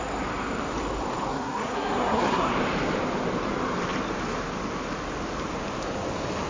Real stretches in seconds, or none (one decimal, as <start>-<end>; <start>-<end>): 0.0-1.3; 2.5-6.5